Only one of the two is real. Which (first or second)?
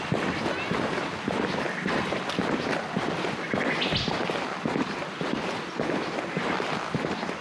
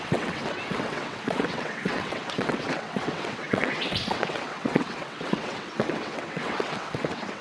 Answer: first